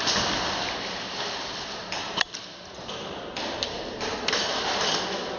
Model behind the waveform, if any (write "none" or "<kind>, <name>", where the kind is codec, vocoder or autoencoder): none